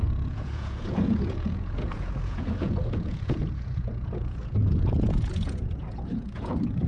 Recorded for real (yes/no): no